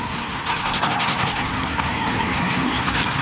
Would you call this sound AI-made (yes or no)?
yes